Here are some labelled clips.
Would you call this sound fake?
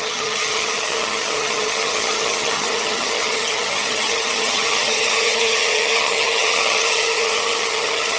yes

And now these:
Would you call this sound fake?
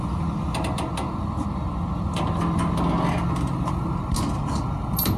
no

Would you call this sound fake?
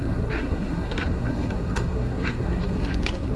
yes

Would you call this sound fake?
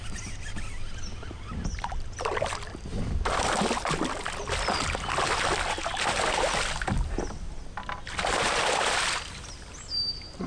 no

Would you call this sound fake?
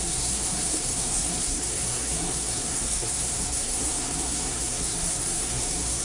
yes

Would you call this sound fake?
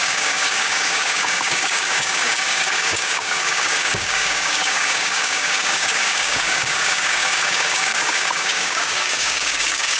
yes